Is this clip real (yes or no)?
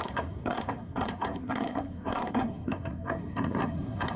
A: no